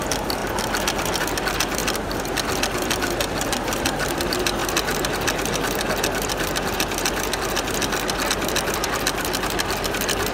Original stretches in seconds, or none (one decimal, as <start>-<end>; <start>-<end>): 0.0-10.3